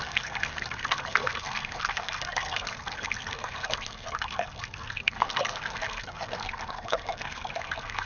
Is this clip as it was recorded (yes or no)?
no